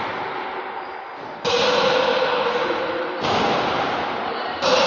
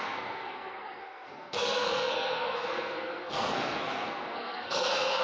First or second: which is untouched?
first